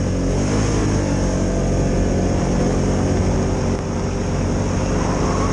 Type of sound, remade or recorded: recorded